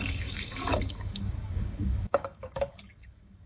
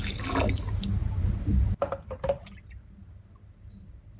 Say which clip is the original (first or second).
second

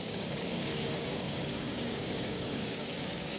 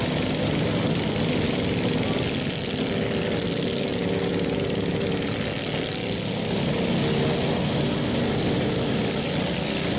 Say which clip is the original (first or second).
second